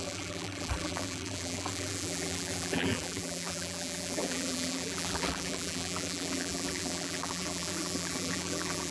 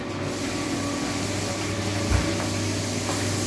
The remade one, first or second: first